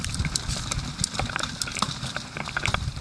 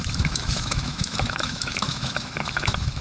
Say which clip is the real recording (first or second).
first